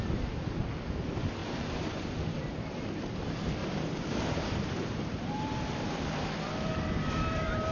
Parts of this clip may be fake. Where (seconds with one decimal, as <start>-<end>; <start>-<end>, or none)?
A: 3.6-7.7